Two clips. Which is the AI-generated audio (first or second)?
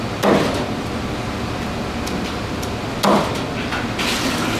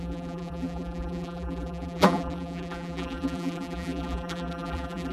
second